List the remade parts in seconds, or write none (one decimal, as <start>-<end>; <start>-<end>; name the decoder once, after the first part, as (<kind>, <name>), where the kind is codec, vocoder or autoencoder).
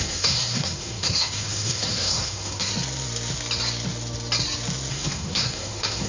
0.0-2.7 (codec, SNAC); 4.9-6.1